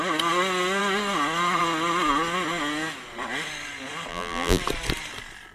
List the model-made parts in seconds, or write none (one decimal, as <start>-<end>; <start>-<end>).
4.1-4.6